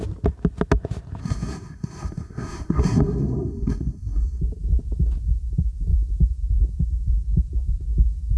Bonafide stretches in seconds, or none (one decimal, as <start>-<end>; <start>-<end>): 0.0-1.2; 4.4-8.4